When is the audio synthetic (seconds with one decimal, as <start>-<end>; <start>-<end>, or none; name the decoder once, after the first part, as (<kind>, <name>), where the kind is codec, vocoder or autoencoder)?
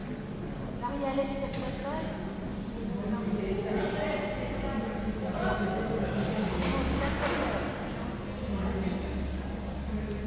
none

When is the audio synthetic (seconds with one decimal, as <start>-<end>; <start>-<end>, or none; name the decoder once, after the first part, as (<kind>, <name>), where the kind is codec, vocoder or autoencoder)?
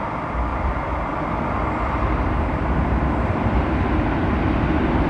0.5-3.6 (vocoder, BigVGAN v2)